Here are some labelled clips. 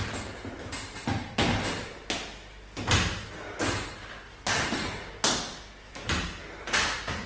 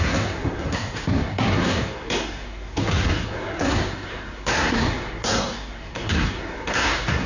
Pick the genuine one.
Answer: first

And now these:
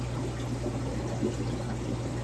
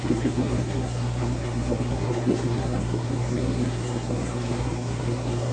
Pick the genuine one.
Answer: first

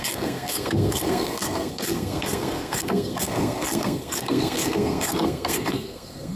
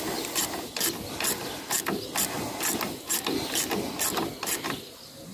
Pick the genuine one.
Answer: second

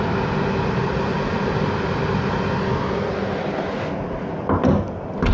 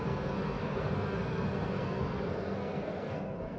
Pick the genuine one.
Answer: first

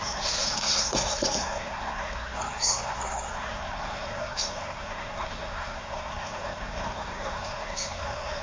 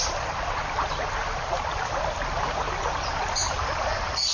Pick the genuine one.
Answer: second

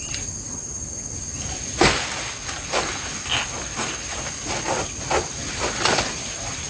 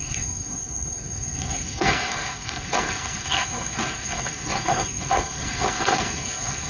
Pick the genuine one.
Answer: first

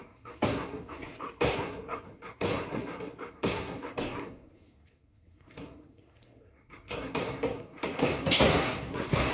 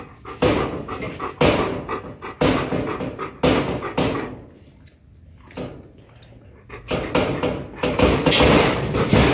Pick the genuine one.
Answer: second